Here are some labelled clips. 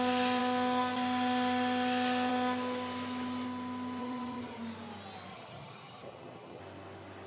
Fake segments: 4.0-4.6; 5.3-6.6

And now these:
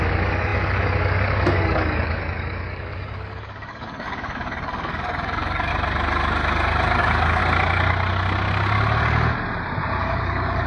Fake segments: 0.0-5.7; 7.0-7.4; 10.0-10.7